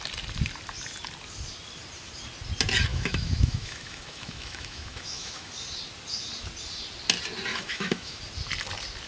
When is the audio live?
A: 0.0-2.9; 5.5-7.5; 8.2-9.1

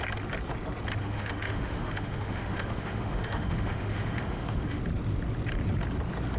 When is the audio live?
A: 0.0-1.0; 4.8-6.4

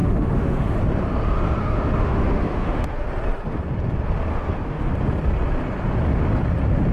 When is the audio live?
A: 0.8-1.6; 3.1-4.3; 4.9-6.9

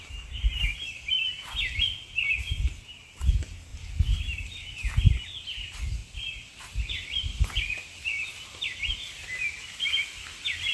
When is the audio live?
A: 0.0-10.7

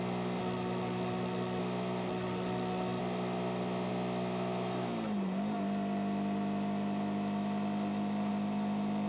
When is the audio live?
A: 0.0-0.4; 1.6-2.1; 3.0-9.1

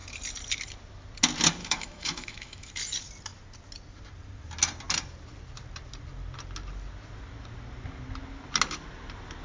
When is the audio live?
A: 0.0-1.6; 2.7-9.4

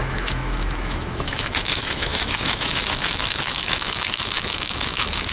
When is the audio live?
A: none